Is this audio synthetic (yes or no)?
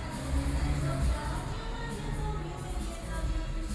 no